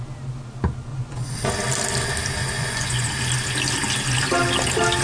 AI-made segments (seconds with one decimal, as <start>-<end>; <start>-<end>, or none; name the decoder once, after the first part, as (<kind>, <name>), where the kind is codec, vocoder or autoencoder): 0.9-1.5 (vocoder, Vocos); 2.4-3.1